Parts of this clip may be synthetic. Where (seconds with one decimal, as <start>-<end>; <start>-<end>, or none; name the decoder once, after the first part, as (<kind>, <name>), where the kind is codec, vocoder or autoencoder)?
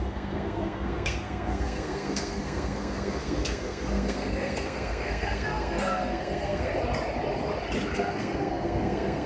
0.0-6.7 (codec, SNAC); 7.9-9.3